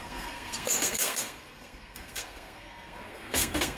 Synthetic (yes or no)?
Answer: yes